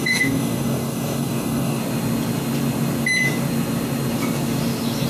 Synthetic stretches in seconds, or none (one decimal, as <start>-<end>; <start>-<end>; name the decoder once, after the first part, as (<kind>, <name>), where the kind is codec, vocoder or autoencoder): 0.0-1.8 (codec, DAC)